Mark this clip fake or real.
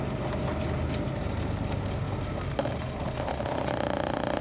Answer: real